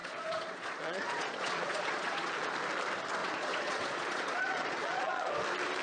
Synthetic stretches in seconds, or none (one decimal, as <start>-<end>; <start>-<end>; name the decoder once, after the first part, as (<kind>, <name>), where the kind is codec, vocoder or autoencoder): 0.0-2.3 (vocoder, Vocos); 3.2-5.3